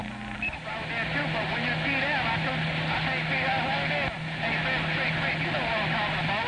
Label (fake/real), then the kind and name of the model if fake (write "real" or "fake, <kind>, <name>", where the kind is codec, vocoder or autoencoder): real